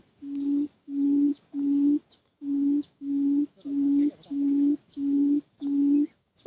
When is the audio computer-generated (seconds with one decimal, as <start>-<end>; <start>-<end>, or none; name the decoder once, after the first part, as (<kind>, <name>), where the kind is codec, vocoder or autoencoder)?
0.0-6.5 (codec, DAC)